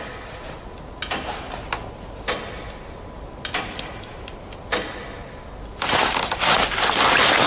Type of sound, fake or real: real